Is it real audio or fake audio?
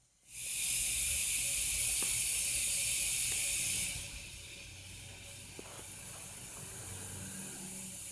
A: real